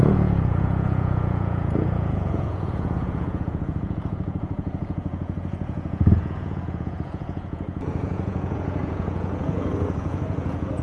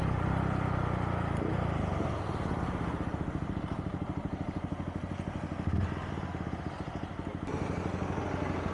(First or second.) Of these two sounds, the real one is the second